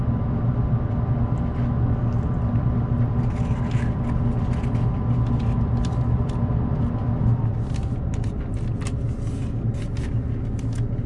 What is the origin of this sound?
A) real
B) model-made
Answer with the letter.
A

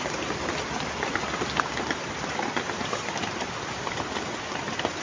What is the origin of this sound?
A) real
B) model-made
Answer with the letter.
A